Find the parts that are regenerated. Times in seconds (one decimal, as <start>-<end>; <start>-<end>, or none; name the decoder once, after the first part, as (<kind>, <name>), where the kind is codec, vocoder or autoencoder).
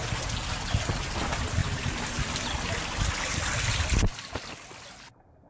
1.6-3.6 (vocoder, BigVGAN v2)